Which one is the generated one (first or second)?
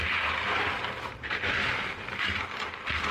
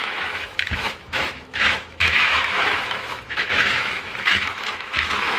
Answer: second